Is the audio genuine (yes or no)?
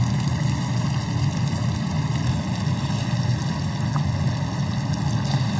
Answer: yes